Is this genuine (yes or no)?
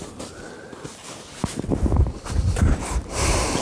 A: yes